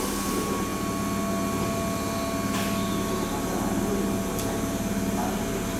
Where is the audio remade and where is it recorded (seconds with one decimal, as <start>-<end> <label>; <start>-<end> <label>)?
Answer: 0.0-5.8 recorded